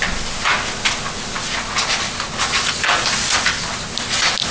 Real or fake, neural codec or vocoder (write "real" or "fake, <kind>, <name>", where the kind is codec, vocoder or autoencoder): real